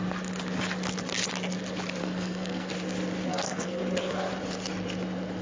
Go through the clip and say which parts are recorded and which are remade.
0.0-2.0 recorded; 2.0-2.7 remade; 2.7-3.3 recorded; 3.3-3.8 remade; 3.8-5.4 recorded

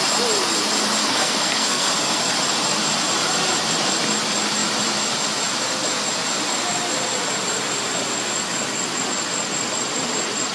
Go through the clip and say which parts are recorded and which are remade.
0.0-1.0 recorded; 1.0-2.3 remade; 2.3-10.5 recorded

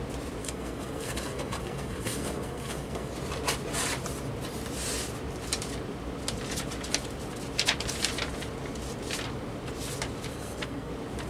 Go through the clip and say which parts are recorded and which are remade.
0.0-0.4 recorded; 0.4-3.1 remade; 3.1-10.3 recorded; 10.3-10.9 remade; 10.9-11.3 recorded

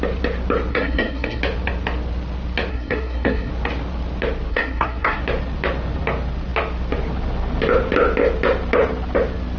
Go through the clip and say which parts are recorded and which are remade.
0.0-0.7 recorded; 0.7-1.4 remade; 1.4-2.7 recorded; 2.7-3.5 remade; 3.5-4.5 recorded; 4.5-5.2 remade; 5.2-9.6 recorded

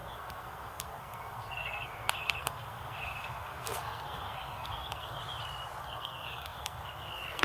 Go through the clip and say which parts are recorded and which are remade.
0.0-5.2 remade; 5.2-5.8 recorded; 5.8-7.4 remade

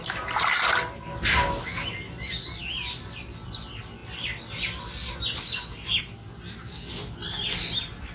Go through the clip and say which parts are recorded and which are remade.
0.0-8.1 recorded

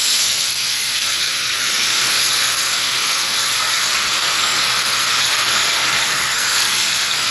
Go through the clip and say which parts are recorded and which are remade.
0.0-7.3 remade

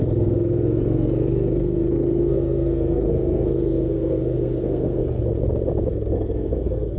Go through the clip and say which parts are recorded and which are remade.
0.0-5.0 remade; 5.0-5.8 recorded; 5.8-7.0 remade